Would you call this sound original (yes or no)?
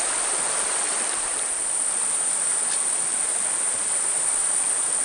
no